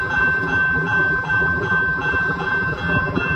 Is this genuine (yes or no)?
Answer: no